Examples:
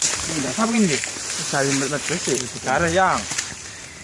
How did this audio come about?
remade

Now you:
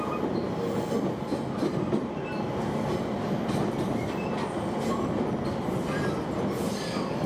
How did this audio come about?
recorded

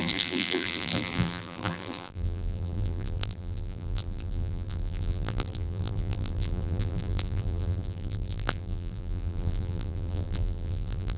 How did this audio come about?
remade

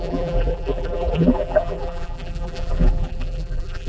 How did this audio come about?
remade